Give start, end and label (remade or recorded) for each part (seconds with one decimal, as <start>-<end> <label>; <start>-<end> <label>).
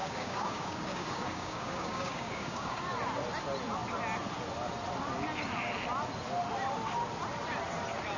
0.0-2.8 remade; 2.8-8.2 recorded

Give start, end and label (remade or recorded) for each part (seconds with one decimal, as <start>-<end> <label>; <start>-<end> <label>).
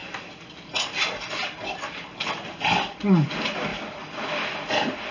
0.0-5.1 recorded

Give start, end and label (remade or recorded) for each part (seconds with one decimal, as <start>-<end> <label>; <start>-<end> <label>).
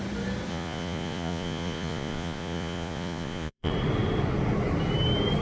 0.0-0.5 recorded; 0.5-3.7 remade; 3.7-5.4 recorded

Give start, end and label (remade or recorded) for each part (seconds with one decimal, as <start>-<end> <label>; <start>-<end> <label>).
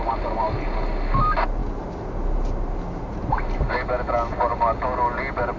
0.0-5.6 recorded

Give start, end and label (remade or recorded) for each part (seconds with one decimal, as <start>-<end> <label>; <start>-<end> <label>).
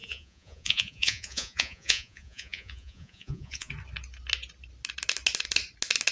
0.0-3.7 remade; 3.7-6.1 recorded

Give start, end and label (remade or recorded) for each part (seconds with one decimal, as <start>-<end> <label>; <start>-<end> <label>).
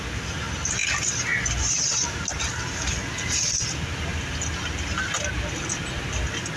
0.0-0.8 recorded; 0.8-3.6 remade; 3.6-6.6 recorded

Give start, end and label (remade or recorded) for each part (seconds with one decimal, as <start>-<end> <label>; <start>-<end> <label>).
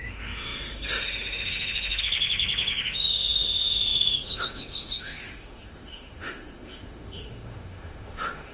0.0-8.5 remade